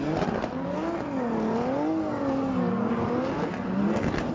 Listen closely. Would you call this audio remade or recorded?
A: recorded